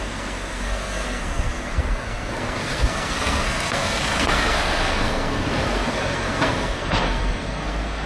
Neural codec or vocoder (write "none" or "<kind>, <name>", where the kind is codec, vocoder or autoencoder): codec, SNAC